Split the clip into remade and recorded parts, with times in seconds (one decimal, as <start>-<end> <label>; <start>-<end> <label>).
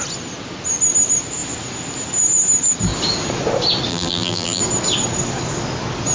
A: 0.0-3.9 recorded; 3.9-4.6 remade; 4.6-6.1 recorded